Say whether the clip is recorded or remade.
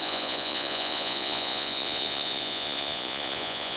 remade